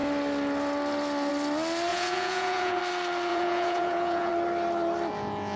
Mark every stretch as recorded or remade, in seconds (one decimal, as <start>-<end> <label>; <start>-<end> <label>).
0.0-1.9 recorded; 1.9-2.8 remade; 2.8-3.3 recorded; 3.3-4.3 remade; 4.3-5.6 recorded